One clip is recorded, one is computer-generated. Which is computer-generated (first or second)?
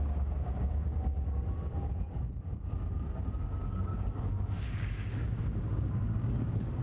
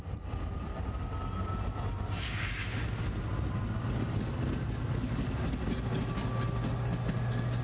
first